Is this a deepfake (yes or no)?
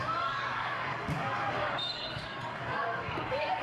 yes